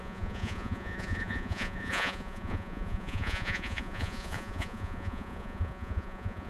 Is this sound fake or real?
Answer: fake